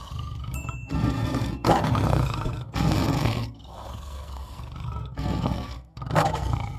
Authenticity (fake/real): fake